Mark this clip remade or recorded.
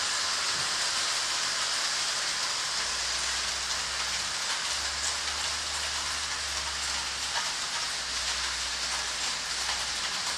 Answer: recorded